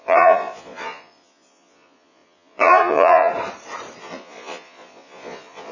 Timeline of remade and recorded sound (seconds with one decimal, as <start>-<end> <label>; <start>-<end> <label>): 0.0-3.3 remade; 3.3-4.0 recorded; 4.0-5.7 remade